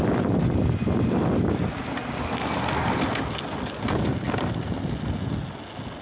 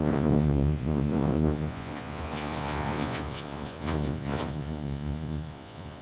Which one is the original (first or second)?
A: first